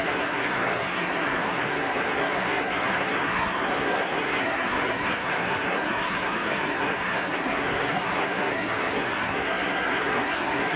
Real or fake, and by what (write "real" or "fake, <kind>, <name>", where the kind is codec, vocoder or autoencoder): fake, codec, SNAC